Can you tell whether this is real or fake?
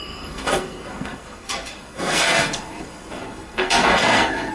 fake